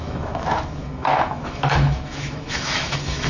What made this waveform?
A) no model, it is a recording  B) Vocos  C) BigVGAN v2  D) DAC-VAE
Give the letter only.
D